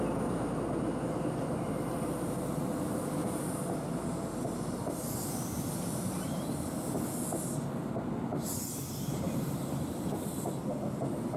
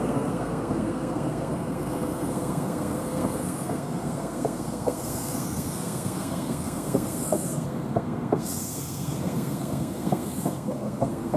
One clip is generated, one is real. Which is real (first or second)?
first